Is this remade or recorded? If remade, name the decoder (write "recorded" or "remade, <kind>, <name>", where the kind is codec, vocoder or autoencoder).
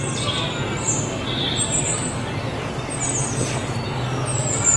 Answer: recorded